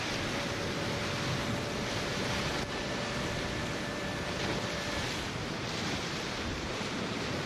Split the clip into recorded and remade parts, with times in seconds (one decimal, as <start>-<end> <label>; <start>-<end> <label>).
0.0-7.5 recorded